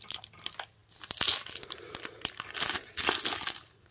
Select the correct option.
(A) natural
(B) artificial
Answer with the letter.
A